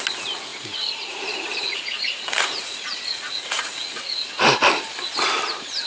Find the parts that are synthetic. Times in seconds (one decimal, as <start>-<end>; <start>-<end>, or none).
0.5-4.0